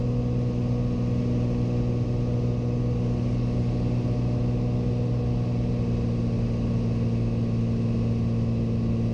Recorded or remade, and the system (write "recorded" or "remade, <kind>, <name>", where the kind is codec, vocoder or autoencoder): recorded